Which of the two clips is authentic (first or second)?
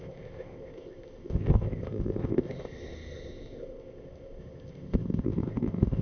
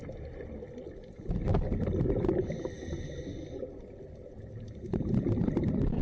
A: second